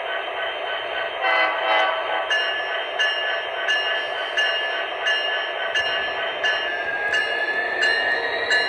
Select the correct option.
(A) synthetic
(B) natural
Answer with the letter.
B